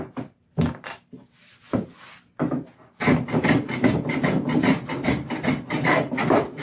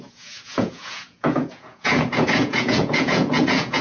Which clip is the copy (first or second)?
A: second